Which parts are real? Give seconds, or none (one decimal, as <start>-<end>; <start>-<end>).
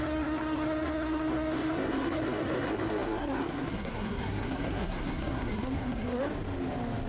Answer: 6.2-7.1